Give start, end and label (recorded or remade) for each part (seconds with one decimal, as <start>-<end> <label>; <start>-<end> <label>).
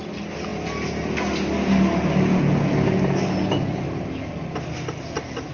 0.0-5.5 recorded